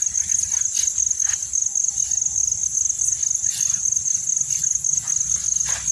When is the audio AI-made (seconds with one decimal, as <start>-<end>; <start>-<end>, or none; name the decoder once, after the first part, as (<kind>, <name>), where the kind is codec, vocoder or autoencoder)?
none